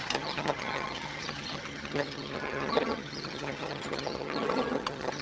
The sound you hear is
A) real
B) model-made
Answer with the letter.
B